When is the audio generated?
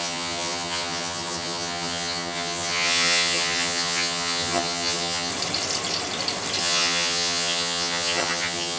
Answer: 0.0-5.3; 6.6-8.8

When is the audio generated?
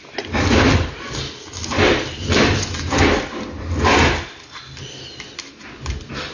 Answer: none